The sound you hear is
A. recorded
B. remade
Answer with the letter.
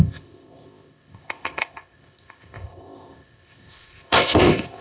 B